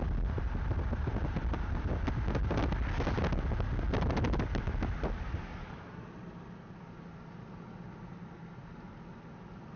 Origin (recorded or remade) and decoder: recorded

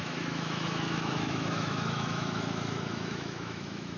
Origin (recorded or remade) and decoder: remade, autoencoder, DAC-VAE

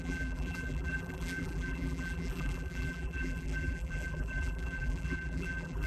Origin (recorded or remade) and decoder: remade, vocoder, BigVGAN v2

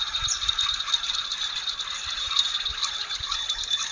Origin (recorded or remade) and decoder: recorded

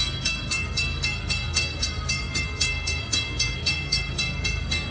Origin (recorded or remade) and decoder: remade, codec, SNAC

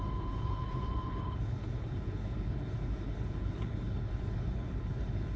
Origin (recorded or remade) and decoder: remade, codec, HILCodec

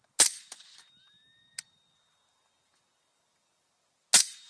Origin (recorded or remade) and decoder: recorded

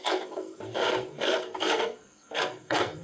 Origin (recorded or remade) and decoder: remade, codec, SNAC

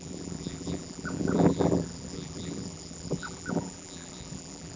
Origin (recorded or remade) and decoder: remade, vocoder, BigVGAN v2